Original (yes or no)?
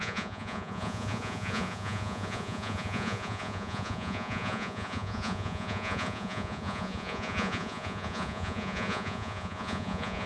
no